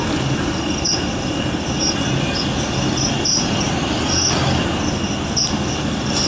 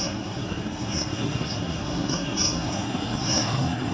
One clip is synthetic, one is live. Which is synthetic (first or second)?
second